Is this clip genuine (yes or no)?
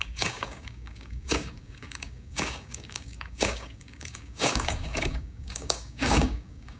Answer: no